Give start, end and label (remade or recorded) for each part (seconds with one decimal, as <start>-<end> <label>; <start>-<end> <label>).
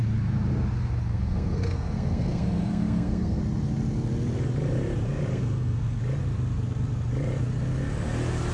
0.0-1.1 recorded; 1.1-3.4 remade; 3.4-5.3 recorded; 5.3-6.0 remade; 6.0-8.5 recorded